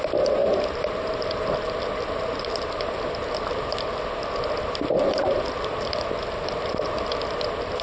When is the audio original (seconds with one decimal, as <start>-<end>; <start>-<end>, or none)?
0.0-7.8